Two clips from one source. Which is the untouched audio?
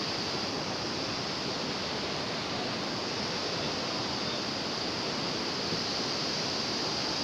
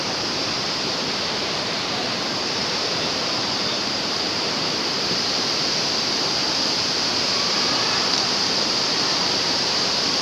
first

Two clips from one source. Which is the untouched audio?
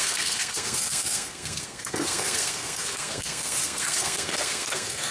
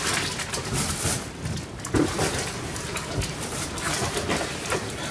second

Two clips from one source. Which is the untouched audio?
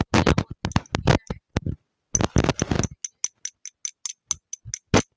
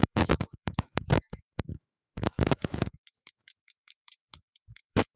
first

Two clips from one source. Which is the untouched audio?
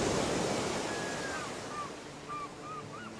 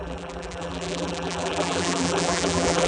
first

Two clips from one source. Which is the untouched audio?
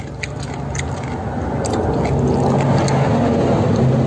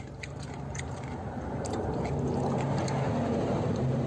first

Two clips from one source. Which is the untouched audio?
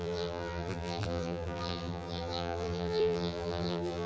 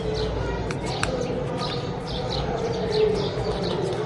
second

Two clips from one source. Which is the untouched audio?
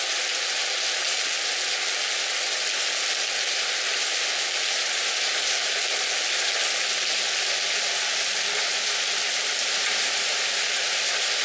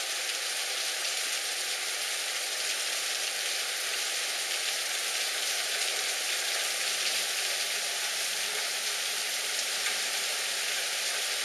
first